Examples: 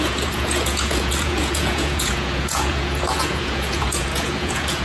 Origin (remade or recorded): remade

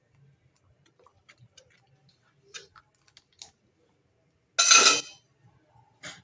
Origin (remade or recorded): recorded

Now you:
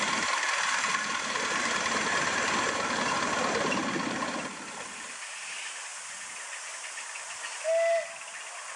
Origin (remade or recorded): recorded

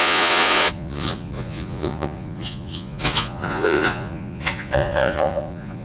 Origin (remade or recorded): remade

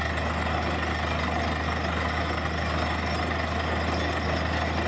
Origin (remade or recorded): recorded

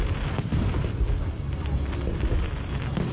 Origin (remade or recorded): recorded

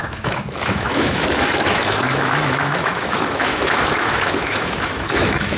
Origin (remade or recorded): remade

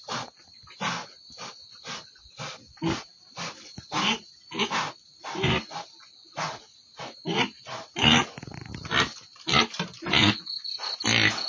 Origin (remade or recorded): recorded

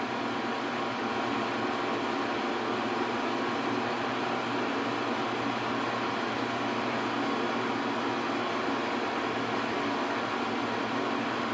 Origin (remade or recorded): recorded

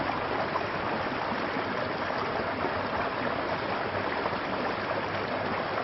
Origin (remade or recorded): recorded